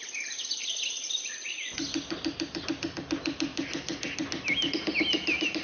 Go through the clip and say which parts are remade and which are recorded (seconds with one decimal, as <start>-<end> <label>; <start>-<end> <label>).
0.0-5.6 recorded